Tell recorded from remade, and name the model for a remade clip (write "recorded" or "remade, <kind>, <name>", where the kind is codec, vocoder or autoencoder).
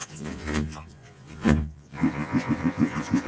remade, vocoder, Vocos